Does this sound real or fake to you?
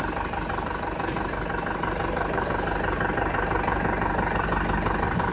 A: real